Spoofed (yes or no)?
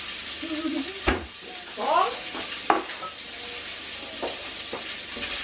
no